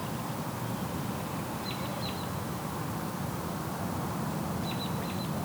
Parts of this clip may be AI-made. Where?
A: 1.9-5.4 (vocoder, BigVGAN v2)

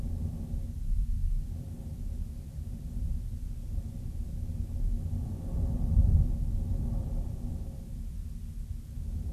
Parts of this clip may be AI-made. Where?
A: none

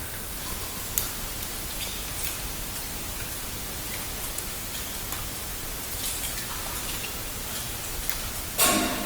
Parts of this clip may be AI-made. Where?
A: 1.7-3.4 (vocoder, BigVGAN v2); 7.3-8.0

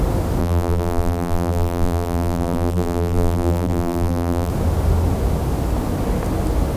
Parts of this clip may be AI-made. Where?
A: 0.4-4.5 (vocoder, BigVGAN v2)

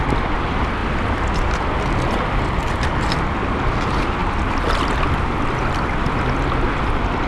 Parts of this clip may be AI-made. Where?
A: none

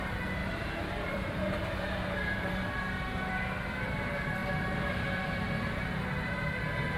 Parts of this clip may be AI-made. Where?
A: 0.4-2.8 (vocoder, BigVGAN v2); 4.4-5.9

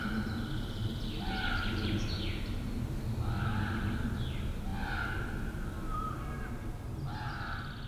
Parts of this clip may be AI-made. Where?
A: none